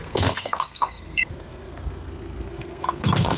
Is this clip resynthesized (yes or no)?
yes